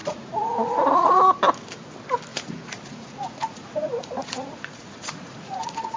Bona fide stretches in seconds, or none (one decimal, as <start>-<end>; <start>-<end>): 1.2-2.3